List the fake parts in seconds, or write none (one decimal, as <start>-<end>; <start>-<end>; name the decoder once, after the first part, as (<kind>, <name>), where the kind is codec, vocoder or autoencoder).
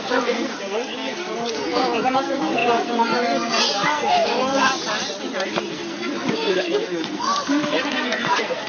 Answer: 0.0-4.7 (codec, SNAC); 5.7-8.7